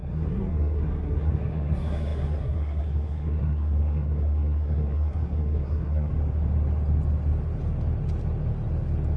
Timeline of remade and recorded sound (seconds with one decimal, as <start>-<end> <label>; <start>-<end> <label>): 0.0-6.1 remade; 6.1-9.2 recorded